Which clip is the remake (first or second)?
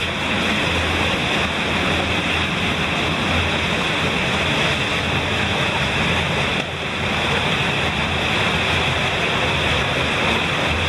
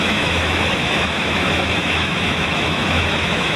second